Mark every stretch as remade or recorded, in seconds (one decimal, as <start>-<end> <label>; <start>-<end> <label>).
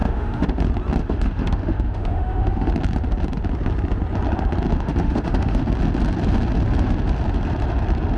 0.0-0.6 remade; 0.6-1.0 recorded; 1.0-2.7 remade; 2.7-4.7 recorded; 4.7-5.6 remade; 5.6-8.2 recorded